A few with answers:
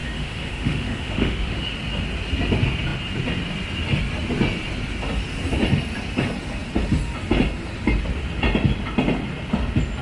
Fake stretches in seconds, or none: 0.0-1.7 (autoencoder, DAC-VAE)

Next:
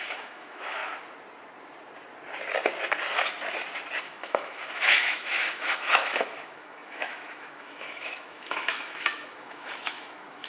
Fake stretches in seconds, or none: 0.0-0.8 (autoencoder, DAC-VAE); 4.0-10.5

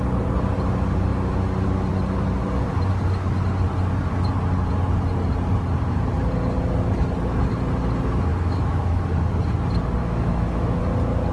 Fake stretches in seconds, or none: 8.3-9.0 (autoencoder, DAC-VAE); 10.0-10.8

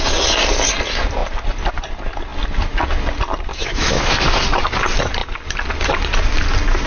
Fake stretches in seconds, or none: 3.5-4.1 (autoencoder, DAC-VAE)